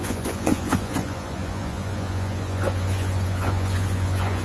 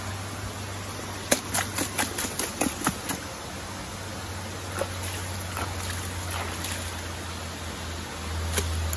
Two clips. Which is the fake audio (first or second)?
first